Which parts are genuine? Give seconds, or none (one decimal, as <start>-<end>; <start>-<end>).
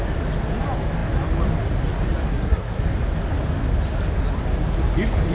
0.0-2.3; 2.8-5.3